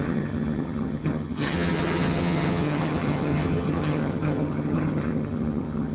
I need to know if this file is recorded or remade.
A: remade